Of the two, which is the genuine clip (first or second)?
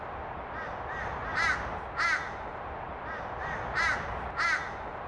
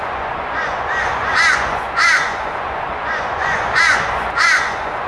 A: first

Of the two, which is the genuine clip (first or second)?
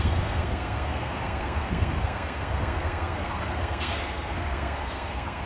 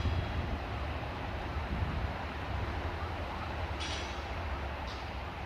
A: second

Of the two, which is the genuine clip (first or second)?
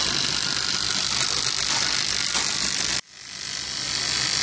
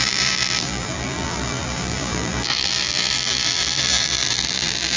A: first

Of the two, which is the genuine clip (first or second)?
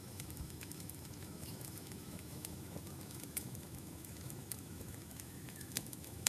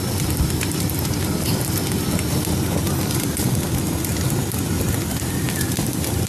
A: second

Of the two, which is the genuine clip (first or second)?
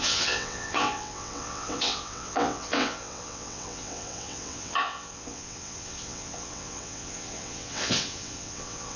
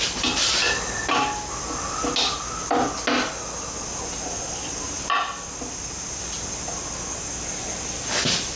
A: second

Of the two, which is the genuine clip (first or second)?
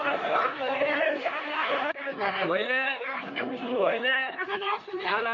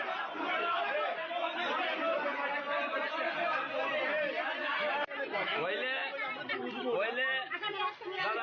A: second